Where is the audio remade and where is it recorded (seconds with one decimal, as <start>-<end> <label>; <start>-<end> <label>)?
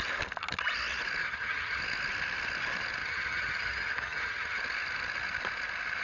0.0-1.2 recorded; 1.2-1.8 remade; 1.8-3.0 recorded; 3.0-4.6 remade; 4.6-6.0 recorded